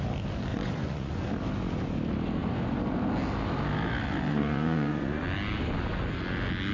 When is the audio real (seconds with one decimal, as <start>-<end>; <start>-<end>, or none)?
0.0-0.5; 1.3-4.3; 5.2-6.7